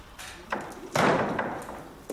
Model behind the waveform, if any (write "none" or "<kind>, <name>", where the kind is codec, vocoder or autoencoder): none